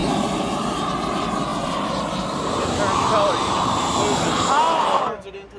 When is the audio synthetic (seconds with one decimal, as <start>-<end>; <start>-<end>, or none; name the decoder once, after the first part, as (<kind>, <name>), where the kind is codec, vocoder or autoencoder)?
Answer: none